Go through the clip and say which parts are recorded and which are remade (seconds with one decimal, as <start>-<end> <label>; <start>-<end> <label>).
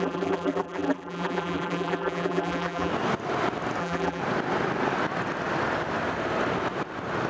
0.0-2.9 remade; 2.9-3.8 recorded; 3.8-4.2 remade; 4.2-7.3 recorded